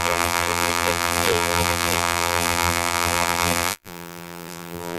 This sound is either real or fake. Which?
fake